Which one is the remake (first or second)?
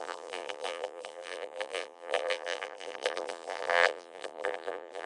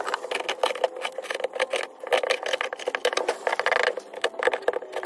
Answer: first